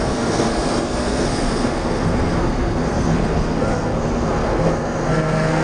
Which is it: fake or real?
fake